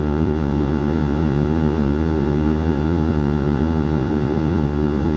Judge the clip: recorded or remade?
remade